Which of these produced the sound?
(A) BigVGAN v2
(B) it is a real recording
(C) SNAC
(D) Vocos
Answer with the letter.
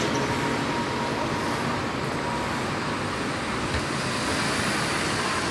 B